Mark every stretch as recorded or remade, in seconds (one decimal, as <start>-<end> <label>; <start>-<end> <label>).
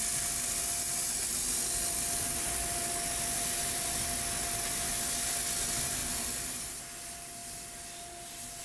0.0-6.0 recorded; 6.0-6.8 remade; 6.8-8.6 recorded